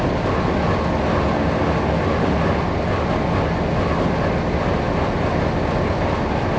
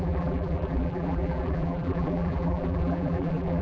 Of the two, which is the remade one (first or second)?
second